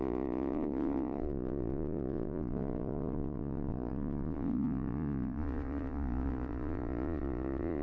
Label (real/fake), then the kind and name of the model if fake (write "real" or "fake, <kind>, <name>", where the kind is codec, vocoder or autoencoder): fake, vocoder, Vocos